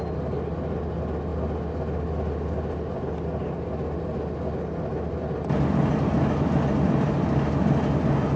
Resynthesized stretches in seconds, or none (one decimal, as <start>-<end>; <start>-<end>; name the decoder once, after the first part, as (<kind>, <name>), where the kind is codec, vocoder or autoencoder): none